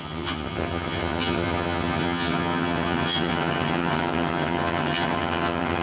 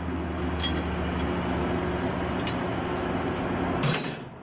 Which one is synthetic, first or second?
first